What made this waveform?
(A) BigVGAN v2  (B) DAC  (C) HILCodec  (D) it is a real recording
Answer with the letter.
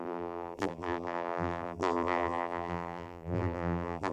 A